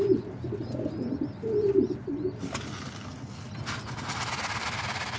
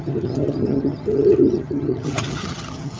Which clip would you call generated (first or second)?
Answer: second